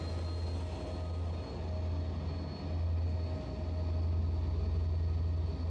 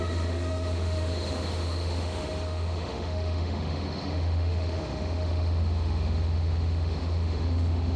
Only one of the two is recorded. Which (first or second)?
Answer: first